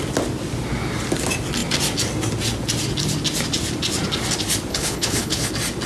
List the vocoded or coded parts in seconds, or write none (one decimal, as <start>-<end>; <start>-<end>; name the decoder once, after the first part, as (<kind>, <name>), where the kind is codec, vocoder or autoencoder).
4.7-5.5 (codec, HILCodec)